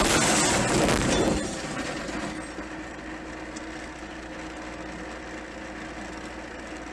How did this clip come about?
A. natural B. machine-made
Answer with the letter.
A